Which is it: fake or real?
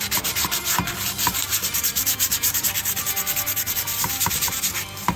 fake